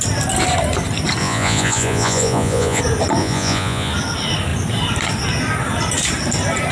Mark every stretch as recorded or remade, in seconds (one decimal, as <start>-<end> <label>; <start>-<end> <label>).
0.0-1.2 recorded; 1.2-2.8 remade; 2.8-3.2 recorded; 3.2-3.9 remade; 3.9-6.7 recorded